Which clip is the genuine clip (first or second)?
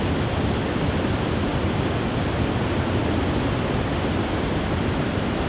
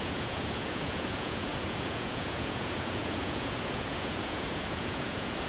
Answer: first